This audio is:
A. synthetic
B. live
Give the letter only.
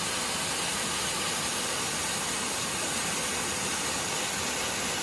B